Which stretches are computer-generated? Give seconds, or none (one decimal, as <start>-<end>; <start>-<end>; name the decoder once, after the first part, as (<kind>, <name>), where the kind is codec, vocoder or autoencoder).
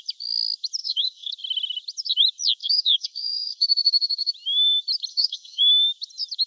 0.8-1.3 (autoencoder, DAC-VAE); 2.6-4.3; 5.1-5.6